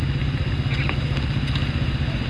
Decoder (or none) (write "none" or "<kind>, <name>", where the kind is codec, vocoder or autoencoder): none